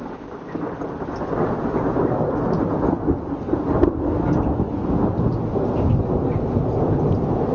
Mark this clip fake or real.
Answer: real